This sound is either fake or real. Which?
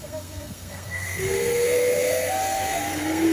fake